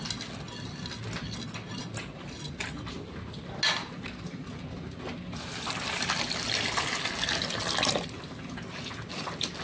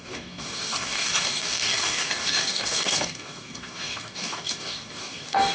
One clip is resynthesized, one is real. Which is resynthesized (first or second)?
second